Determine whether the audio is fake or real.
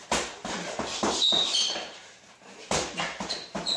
fake